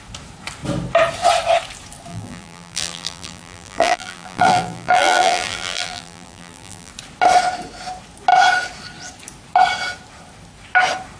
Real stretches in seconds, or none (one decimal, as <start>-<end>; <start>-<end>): 0.0-2.1; 6.9-11.2